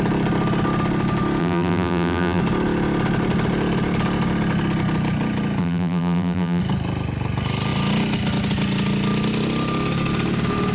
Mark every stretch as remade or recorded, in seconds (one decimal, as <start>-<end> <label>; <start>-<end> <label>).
0.0-1.4 recorded; 1.4-2.4 remade; 2.4-5.6 recorded; 5.6-6.6 remade; 6.6-10.7 recorded